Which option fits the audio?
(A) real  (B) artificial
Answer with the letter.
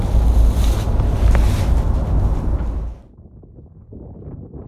A